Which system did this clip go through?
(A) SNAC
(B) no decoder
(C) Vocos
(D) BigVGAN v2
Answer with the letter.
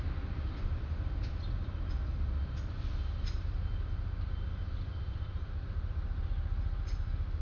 B